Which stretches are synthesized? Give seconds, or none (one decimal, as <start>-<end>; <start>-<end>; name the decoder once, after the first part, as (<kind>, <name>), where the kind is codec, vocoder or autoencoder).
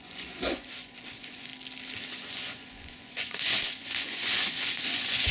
0.0-1.5 (vocoder, Vocos); 2.1-5.3